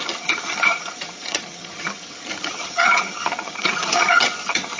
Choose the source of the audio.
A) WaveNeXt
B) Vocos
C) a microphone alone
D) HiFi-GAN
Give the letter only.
D